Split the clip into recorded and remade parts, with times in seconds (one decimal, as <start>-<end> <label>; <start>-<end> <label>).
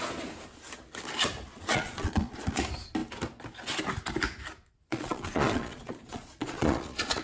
0.0-1.5 recorded; 1.5-2.6 remade; 2.6-4.9 recorded; 4.9-7.2 remade